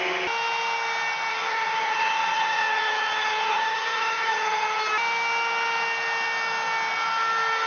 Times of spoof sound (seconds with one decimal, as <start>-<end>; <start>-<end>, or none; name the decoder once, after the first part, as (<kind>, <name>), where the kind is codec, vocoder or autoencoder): 1.3-4.8 (vocoder, HiFi-GAN)